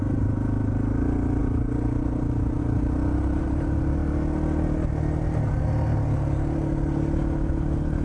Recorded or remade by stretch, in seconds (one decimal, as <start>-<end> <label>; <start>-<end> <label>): 0.0-8.0 recorded